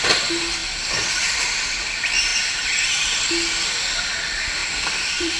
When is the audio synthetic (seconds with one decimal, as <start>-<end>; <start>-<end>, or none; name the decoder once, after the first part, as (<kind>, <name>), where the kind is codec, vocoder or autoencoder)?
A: 4.6-5.4 (vocoder, BigVGAN v2)

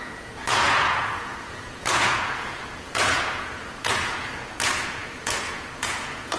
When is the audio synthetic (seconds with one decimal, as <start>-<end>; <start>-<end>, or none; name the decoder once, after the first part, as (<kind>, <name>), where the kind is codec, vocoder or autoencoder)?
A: 0.0-6.4 (vocoder, Vocos)

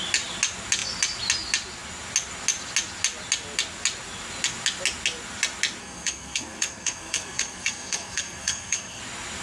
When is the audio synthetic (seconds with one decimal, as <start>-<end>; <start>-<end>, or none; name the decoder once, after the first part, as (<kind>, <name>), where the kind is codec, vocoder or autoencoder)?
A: 5.8-9.0 (codec, SNAC)